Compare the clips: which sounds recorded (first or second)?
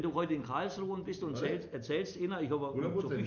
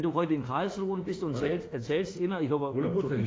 first